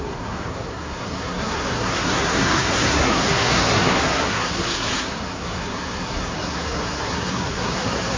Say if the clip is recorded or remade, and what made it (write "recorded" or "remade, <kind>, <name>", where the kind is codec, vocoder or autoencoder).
remade, codec, SNAC